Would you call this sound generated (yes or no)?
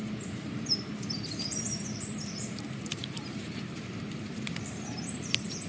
yes